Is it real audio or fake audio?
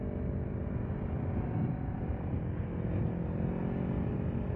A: real